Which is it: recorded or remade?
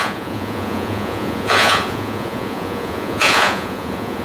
remade